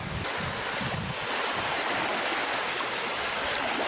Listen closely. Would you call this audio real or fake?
real